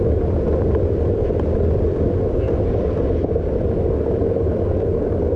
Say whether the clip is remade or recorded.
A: recorded